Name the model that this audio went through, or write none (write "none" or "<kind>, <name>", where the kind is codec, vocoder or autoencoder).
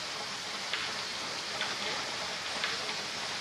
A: none